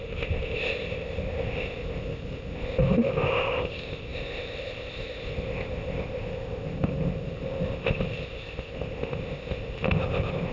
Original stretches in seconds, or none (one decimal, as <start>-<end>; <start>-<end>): none